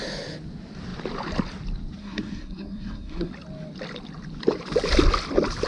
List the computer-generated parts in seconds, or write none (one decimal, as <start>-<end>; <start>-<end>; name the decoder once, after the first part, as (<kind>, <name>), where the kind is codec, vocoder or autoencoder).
2.0-3.3 (codec, SNAC)